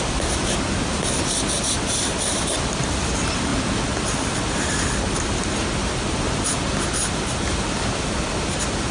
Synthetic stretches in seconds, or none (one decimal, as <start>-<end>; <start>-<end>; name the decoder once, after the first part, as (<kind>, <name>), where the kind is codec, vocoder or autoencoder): none